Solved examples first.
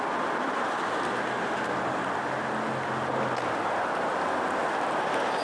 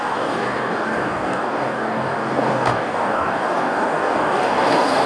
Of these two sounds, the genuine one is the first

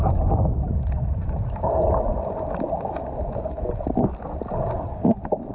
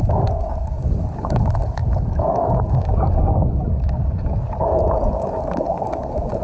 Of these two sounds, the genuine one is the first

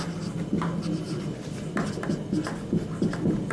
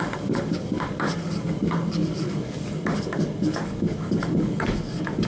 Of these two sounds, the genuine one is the first